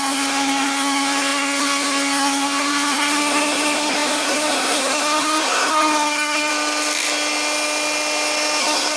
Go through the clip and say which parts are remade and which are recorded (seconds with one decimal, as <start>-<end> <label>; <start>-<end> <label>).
0.0-6.5 remade; 6.5-8.6 recorded; 8.6-9.0 remade